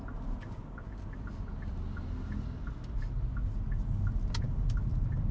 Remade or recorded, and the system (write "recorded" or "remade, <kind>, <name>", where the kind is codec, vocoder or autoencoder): recorded